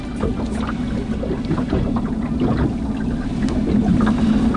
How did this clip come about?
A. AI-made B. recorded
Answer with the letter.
B